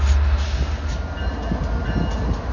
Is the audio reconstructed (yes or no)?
no